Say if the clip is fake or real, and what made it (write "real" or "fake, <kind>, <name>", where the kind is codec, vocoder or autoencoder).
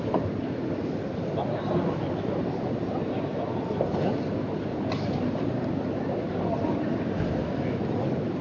real